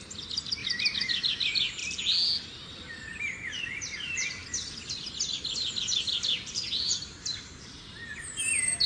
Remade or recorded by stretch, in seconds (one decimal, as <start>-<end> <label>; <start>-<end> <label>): 0.0-1.8 remade; 1.8-2.7 recorded; 2.7-8.9 remade